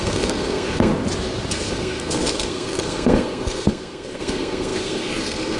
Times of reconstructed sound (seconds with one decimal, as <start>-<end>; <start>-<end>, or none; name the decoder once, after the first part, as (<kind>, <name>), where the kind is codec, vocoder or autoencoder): 0.0-0.9 (codec, SNAC); 1.5-5.6